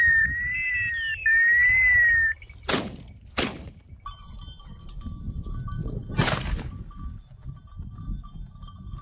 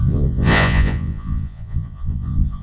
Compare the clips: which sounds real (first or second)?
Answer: first